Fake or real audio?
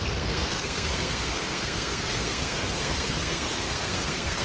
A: fake